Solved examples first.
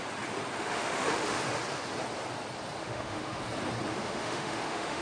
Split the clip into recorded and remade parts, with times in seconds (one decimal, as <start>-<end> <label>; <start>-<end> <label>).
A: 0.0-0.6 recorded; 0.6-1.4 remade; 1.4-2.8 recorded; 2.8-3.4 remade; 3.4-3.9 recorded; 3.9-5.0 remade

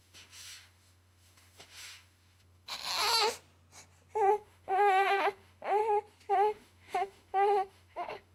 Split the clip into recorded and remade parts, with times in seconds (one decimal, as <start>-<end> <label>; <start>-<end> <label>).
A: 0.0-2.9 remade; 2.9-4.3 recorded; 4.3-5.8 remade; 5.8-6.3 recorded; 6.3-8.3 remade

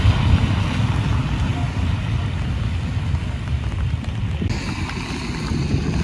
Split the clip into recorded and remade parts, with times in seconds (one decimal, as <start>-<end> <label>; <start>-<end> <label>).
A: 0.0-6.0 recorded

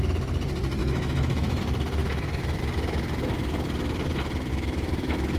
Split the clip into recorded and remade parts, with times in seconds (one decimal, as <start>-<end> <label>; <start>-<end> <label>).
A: 0.0-0.8 recorded; 0.8-1.6 remade; 1.6-2.0 recorded; 2.0-2.6 remade; 2.6-4.5 recorded; 4.5-5.4 remade

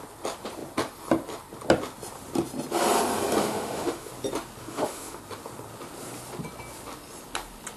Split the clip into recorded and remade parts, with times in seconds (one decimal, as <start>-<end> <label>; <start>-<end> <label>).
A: 0.0-3.4 recorded; 3.4-4.1 remade; 4.1-4.6 recorded; 4.6-5.2 remade; 5.2-7.8 recorded

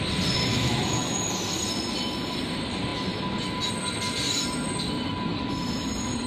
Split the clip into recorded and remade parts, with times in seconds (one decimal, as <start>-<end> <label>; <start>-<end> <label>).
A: 0.0-0.5 recorded; 0.5-1.2 remade; 1.2-6.3 recorded

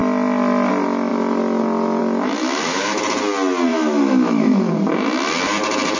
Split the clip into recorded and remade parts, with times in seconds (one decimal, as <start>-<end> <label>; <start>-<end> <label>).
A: 0.0-2.4 recorded; 2.4-3.0 remade; 3.0-3.7 recorded; 3.7-4.7 remade; 4.7-6.0 recorded

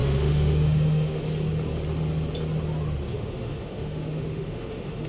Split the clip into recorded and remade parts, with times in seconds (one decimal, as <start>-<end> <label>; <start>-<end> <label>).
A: 0.0-1.2 remade; 1.2-3.1 recorded; 3.1-5.1 remade